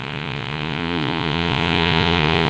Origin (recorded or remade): remade